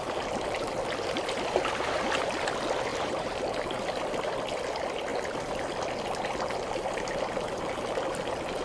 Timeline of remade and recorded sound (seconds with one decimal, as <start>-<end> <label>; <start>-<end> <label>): 0.0-2.9 recorded; 2.9-4.0 remade; 4.0-8.6 recorded